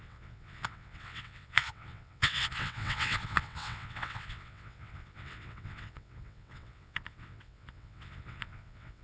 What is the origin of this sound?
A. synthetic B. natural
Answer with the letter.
A